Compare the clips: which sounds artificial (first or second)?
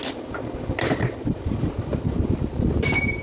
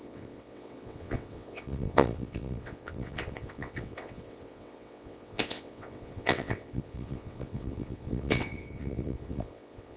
second